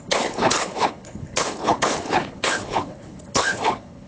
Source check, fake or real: fake